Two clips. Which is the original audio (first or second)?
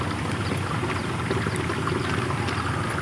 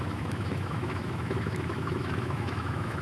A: first